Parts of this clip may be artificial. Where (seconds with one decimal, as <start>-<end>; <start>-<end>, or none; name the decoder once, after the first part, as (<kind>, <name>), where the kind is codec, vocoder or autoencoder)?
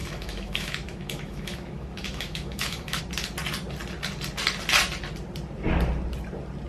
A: 0.0-3.0 (autoencoder, DAC-VAE)